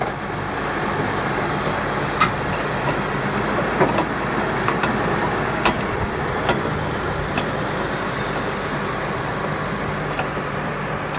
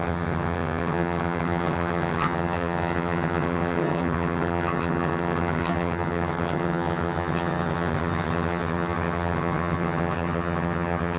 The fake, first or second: second